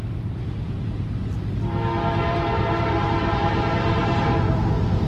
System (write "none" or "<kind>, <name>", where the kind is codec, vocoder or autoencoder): vocoder, BigVGAN v2